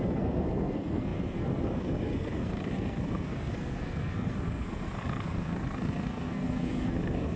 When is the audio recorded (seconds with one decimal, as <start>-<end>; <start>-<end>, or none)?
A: none